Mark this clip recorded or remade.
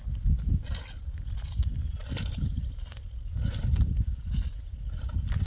recorded